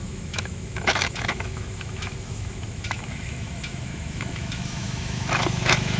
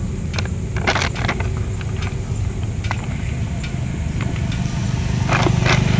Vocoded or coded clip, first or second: first